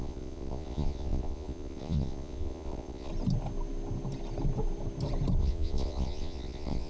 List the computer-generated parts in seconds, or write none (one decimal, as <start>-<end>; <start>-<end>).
0.0-3.1; 5.4-6.9